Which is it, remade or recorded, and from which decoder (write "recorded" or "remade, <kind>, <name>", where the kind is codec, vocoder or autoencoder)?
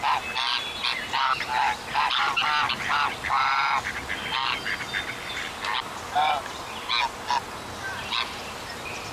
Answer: recorded